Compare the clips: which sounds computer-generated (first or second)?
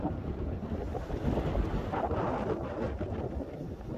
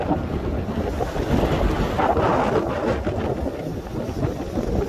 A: first